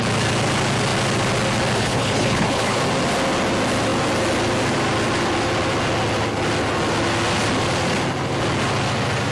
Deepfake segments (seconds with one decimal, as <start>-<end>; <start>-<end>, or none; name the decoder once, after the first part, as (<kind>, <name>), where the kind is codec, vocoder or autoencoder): 1.8-2.8 (codec, HILCodec)